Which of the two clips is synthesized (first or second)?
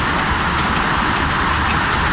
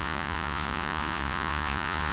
second